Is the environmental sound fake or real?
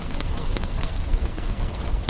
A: fake